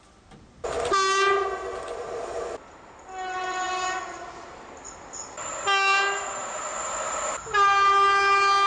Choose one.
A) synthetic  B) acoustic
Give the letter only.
B